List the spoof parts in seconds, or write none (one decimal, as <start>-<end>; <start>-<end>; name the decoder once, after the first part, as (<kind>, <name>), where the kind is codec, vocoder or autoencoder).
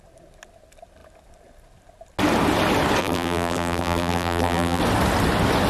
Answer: 3.0-4.8 (vocoder, BigVGAN v2)